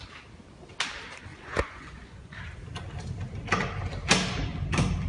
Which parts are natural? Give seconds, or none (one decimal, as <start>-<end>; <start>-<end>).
0.0-1.3; 2.4-5.1